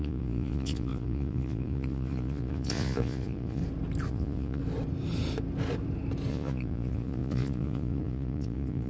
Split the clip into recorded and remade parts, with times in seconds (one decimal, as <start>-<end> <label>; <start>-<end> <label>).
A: 0.0-3.6 remade; 3.6-4.1 recorded; 4.1-4.6 remade; 4.6-6.3 recorded; 6.3-8.9 remade